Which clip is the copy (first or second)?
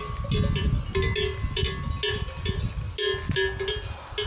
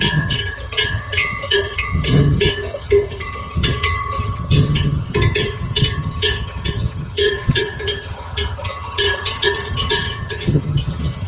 second